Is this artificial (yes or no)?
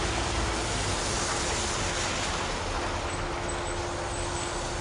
no